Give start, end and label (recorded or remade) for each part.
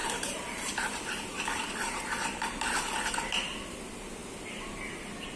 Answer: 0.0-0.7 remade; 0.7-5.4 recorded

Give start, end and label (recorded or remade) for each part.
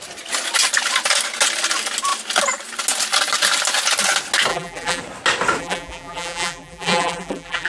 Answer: 0.0-4.5 recorded; 4.5-5.0 remade; 5.0-5.6 recorded; 5.6-7.7 remade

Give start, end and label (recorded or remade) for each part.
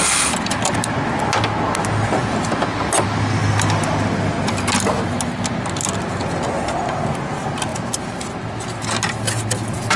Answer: 0.0-10.0 recorded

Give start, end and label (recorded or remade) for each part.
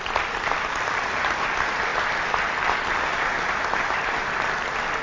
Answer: 0.0-5.0 recorded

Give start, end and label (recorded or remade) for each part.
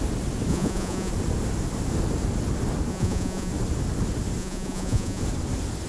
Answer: 0.0-0.5 recorded; 0.5-1.1 remade; 1.1-2.9 recorded; 2.9-3.5 remade; 3.5-4.4 recorded; 4.4-5.2 remade; 5.2-5.9 recorded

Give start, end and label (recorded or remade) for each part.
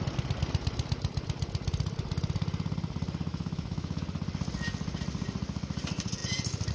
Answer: 0.0-3.3 recorded; 3.3-4.0 remade; 4.0-6.7 recorded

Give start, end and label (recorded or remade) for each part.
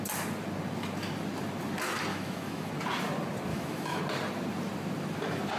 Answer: 0.0-2.1 recorded; 2.1-2.7 remade; 2.7-3.5 recorded; 3.5-4.0 remade; 4.0-5.6 recorded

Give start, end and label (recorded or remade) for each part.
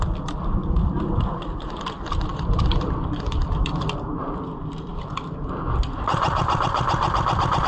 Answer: 0.0-4.9 remade; 4.9-6.0 recorded; 6.0-7.7 remade